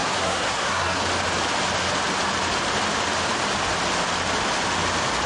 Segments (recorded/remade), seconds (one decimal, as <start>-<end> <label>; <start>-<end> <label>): 0.0-1.0 remade; 1.0-5.3 recorded